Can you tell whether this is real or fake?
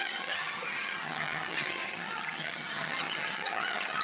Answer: fake